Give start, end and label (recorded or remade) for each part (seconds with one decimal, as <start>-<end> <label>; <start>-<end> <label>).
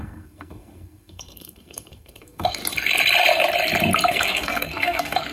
0.0-2.6 remade; 2.6-4.1 recorded; 4.1-5.3 remade